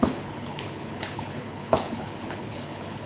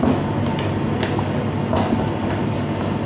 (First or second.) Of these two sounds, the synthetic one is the first